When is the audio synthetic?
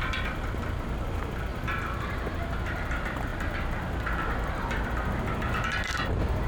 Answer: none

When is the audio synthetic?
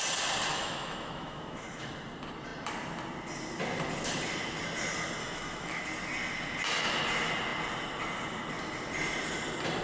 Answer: 0.5-1.9 (autoencoder, DAC-VAE); 5.2-5.8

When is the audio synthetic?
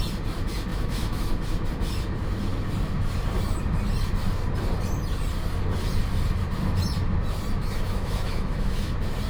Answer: 0.7-1.3 (autoencoder, DAC-VAE); 7.6-8.9